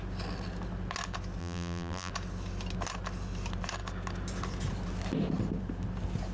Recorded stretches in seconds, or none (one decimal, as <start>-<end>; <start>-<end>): 0.0-1.4; 2.1-6.3